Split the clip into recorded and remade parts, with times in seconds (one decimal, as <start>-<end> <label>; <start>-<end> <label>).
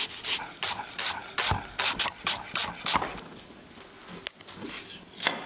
0.0-5.5 recorded